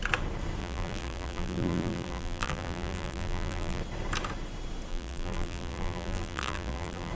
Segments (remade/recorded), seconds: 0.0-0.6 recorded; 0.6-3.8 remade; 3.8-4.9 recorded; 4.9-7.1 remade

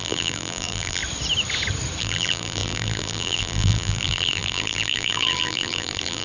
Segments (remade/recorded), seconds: 0.0-1.0 remade; 1.0-2.0 recorded; 2.0-6.2 remade